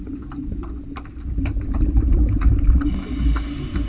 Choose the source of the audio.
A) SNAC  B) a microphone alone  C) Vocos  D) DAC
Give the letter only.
B